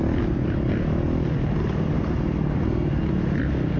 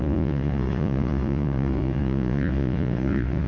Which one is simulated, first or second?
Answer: second